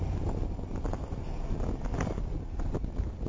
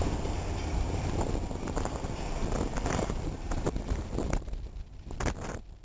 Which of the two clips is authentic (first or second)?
first